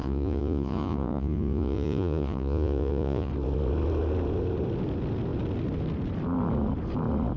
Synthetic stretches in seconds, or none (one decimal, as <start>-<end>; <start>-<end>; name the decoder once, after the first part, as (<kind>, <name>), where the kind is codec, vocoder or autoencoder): 0.0-3.3 (vocoder, Vocos)